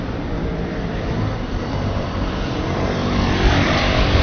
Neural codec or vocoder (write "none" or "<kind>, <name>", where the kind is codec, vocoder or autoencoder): vocoder, BigVGAN v2